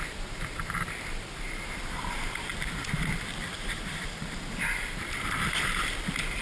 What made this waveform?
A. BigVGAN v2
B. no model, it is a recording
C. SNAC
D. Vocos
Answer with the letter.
A